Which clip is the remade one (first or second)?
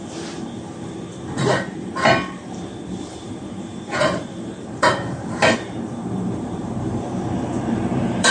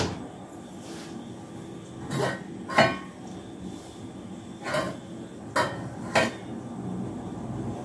first